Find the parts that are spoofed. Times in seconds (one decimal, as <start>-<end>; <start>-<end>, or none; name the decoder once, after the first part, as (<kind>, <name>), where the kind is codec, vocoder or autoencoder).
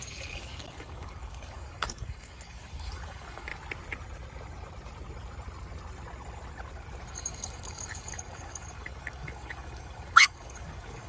0.0-3.5 (codec, DAC); 7.1-11.1